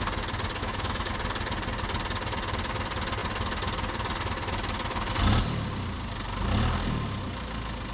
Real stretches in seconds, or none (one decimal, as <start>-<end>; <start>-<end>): 0.0-0.6; 1.1-7.9